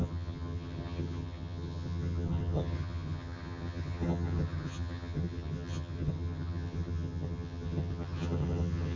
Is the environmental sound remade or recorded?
remade